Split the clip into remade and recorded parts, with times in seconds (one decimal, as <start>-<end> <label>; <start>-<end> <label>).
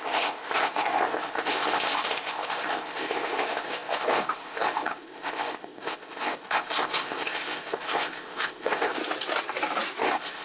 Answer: 0.0-9.0 remade; 9.0-10.0 recorded; 10.0-10.4 remade